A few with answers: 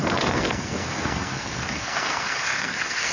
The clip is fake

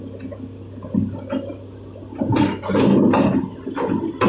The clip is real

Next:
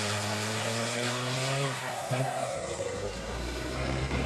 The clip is fake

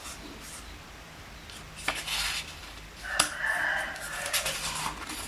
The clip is real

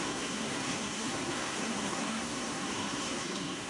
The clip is fake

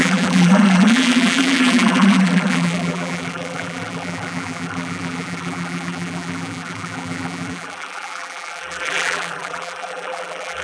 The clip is fake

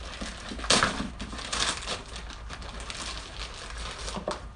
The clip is real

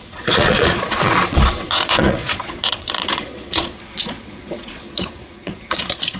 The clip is fake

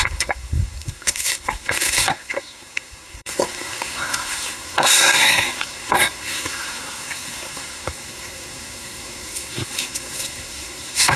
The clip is fake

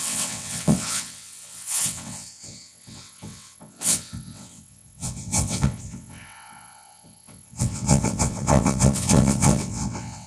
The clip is fake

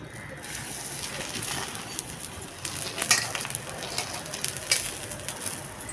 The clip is real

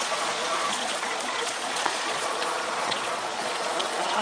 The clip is fake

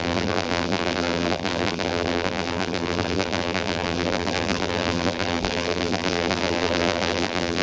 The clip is fake